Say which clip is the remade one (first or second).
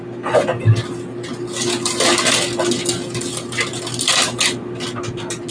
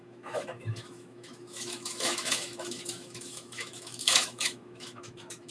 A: second